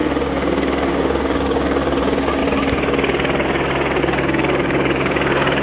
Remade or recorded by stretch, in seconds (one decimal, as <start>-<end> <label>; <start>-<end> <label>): 0.0-0.9 recorded; 0.9-2.4 remade; 2.4-4.0 recorded; 4.0-5.6 remade